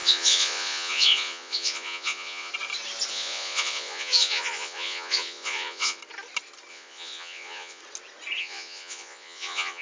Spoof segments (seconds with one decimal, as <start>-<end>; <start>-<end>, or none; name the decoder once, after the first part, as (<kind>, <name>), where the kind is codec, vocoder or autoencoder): 0.0-2.5 (vocoder, Vocos); 3.1-6.0; 6.7-7.8; 8.4-9.8